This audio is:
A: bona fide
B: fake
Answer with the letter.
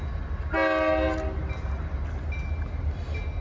A